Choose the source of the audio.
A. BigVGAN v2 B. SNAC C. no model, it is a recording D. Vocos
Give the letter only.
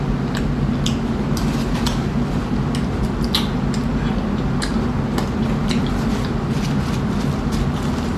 C